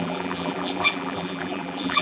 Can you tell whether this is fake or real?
fake